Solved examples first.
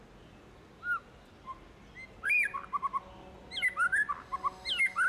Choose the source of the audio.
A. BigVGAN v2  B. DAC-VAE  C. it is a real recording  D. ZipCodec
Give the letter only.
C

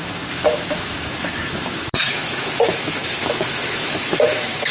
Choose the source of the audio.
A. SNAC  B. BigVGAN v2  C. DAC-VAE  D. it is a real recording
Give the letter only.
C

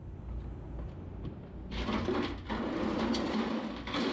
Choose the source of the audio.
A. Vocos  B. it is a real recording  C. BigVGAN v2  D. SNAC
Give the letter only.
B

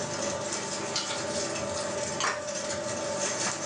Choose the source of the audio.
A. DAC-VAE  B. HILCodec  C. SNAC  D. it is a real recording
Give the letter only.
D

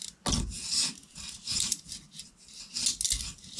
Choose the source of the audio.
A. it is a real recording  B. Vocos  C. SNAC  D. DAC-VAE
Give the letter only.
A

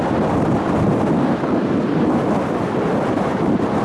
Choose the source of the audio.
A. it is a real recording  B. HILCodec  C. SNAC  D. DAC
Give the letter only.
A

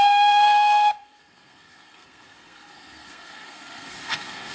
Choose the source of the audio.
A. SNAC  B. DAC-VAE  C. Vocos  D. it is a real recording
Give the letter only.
A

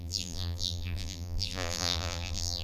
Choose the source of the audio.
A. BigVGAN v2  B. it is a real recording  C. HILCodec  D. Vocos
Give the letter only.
A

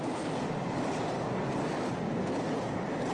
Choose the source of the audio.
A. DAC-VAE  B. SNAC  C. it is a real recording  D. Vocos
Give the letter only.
C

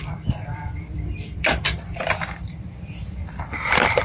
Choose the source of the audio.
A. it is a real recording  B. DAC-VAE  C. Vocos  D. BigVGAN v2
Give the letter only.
D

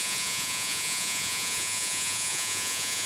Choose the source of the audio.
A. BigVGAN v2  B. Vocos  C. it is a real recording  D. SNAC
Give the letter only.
B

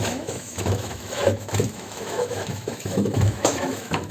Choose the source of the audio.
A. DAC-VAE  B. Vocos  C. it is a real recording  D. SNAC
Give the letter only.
A